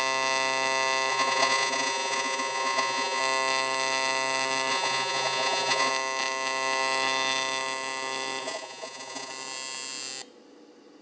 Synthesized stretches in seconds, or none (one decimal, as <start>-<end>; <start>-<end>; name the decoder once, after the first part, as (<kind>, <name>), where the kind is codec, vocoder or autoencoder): 1.1-3.2 (vocoder, Vocos); 4.7-5.9; 8.4-9.3